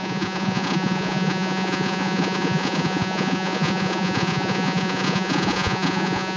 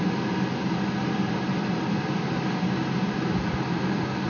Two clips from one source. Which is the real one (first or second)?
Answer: second